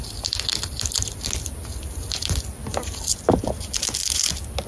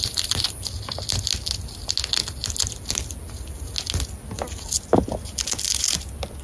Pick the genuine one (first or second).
second